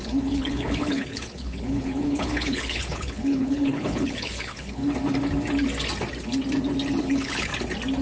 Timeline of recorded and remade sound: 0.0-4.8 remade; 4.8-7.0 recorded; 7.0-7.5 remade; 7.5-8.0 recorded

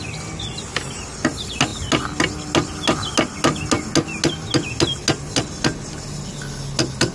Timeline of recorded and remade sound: 0.0-7.1 recorded

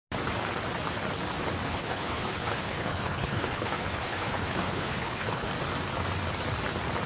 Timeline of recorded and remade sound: 0.0-1.6 recorded; 1.6-5.5 remade; 5.5-7.1 recorded

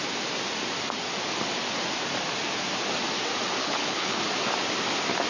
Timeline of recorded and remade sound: 0.0-3.6 recorded; 3.6-4.2 remade; 4.2-5.3 recorded

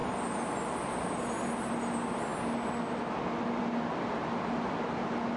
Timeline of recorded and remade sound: 0.0-5.4 recorded